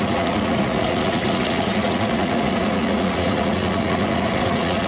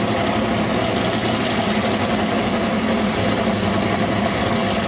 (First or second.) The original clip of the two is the second